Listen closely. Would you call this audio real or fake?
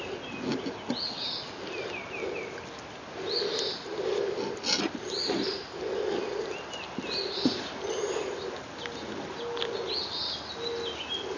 real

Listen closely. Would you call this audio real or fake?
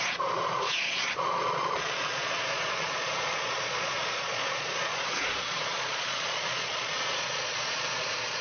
fake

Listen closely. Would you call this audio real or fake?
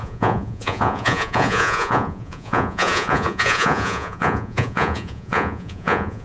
fake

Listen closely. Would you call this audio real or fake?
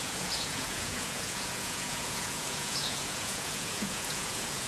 fake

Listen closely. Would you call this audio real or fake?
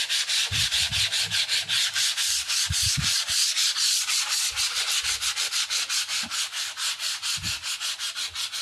real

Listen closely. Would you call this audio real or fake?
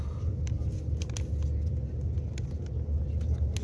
real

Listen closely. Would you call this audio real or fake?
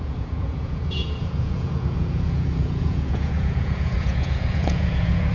fake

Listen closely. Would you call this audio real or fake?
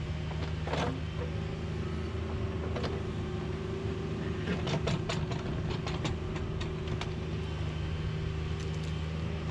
real